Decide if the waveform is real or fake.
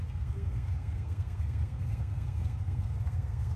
fake